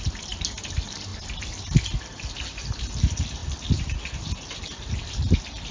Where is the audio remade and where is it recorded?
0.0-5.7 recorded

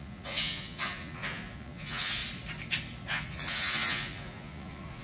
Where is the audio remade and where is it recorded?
0.0-2.2 remade; 2.2-3.1 recorded; 3.1-5.0 remade

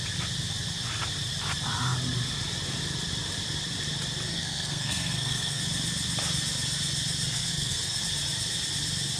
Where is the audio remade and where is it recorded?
0.0-4.3 recorded; 4.3-5.6 remade; 5.6-7.3 recorded; 7.3-8.0 remade; 8.0-9.2 recorded

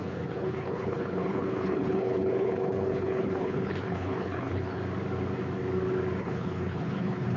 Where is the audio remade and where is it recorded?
0.0-4.8 remade; 4.8-6.2 recorded; 6.2-7.4 remade

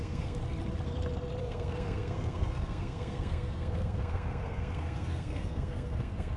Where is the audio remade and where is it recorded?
0.0-0.4 remade; 0.4-1.4 recorded; 1.4-6.4 remade

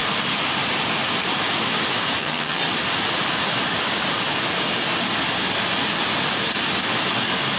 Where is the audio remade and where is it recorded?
0.0-2.2 recorded; 2.2-2.6 remade; 2.6-7.6 recorded

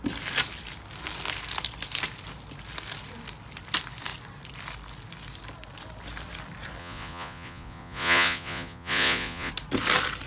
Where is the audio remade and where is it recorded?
0.0-6.8 recorded; 6.8-9.5 remade; 9.5-10.3 recorded

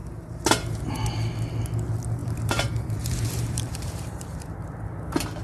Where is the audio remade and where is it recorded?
0.0-0.9 remade; 0.9-2.2 recorded; 2.2-4.5 remade; 4.5-5.4 recorded